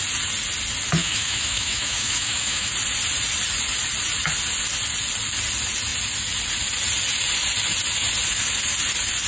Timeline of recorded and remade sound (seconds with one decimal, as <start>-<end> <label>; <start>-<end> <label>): 0.0-1.0 recorded; 1.0-2.7 remade; 2.7-9.3 recorded